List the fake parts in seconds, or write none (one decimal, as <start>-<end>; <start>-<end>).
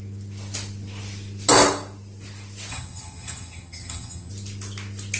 2.7-4.3